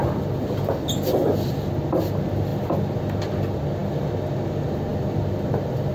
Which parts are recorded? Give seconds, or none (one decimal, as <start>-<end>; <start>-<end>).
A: 0.0-5.9